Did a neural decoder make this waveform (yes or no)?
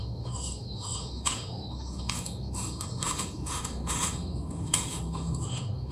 yes